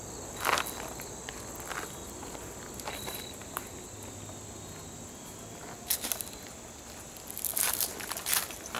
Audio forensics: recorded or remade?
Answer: recorded